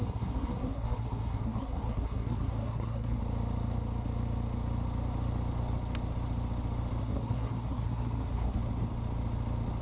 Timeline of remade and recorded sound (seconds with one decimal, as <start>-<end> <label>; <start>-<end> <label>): 0.0-3.2 remade; 3.2-7.0 recorded; 7.0-8.6 remade; 8.6-9.8 recorded